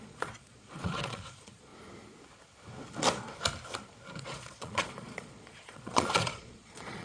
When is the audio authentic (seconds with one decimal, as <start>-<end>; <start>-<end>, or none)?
1.7-4.2